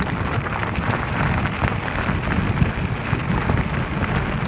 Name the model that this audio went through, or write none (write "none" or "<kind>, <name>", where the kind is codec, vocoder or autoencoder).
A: none